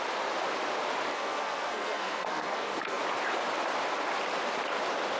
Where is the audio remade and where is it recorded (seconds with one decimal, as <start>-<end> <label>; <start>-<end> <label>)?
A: 0.0-1.1 recorded; 1.1-3.0 remade; 3.0-5.2 recorded